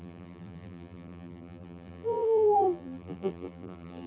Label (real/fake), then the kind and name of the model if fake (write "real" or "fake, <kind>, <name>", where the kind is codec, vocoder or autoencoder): fake, vocoder, BigVGAN v2